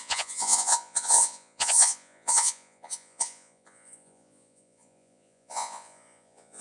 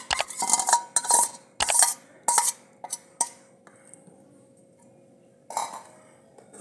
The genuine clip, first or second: second